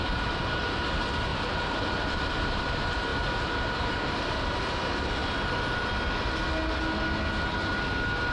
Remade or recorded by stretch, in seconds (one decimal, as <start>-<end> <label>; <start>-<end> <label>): 0.0-0.9 remade; 0.9-1.3 recorded; 1.3-2.3 remade; 2.3-3.1 recorded; 3.1-4.6 remade; 4.6-8.3 recorded